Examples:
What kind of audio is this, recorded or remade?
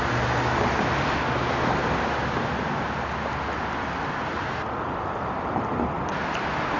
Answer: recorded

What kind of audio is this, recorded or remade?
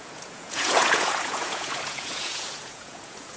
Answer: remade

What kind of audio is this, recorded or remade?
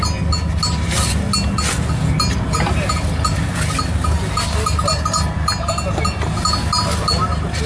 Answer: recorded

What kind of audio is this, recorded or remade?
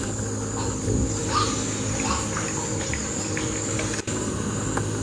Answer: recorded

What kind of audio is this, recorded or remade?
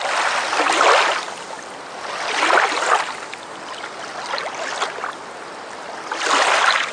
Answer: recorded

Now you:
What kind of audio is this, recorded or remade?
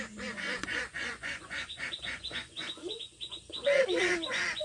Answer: remade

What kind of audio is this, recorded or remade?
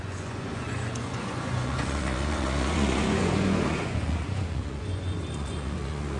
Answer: remade